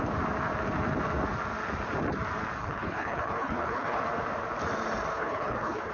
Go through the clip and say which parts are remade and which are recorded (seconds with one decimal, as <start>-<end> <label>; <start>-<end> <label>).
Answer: 0.0-2.6 recorded; 2.6-4.0 remade; 4.0-5.1 recorded; 5.1-5.9 remade